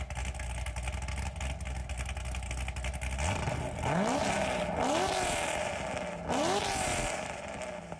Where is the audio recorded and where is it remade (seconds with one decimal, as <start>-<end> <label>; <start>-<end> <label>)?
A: 0.0-8.0 recorded